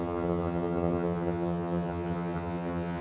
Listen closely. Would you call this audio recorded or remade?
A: remade